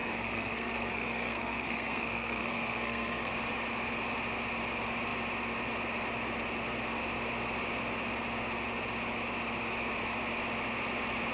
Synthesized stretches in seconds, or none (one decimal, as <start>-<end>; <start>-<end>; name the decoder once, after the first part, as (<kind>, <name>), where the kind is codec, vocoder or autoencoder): 0.0-3.3 (codec, SNAC)